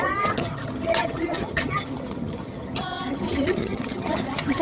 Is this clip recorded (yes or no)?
no